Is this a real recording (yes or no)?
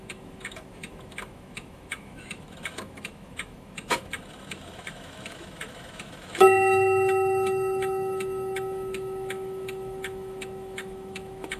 no